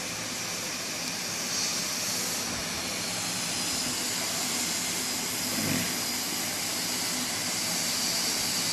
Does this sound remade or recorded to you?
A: recorded